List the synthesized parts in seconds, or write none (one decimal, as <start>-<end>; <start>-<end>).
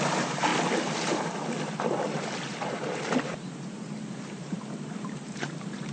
0.0-0.5; 4.0-5.9